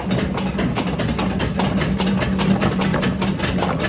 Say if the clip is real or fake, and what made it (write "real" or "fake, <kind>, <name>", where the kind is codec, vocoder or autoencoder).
real